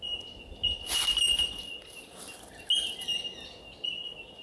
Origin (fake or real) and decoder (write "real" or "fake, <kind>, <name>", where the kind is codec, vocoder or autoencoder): real